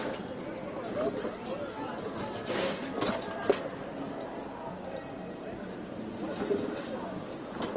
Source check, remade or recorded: recorded